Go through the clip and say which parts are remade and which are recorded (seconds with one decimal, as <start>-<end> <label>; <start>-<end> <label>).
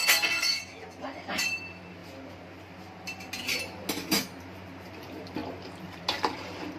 0.0-0.6 remade; 0.6-6.8 recorded